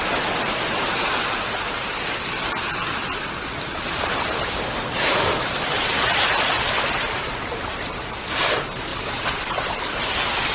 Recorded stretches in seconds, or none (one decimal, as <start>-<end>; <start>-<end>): 0.0-3.0; 8.0-8.9; 10.0-10.5